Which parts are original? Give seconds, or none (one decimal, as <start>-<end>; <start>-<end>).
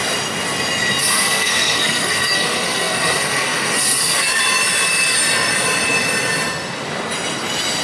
0.0-1.0; 4.4-7.8